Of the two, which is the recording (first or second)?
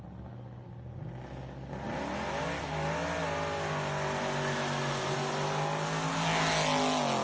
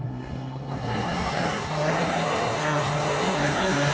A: first